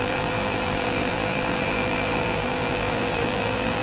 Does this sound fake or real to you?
fake